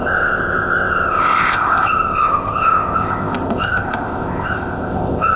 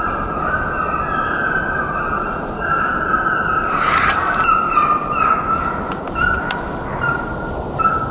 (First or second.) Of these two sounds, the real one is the second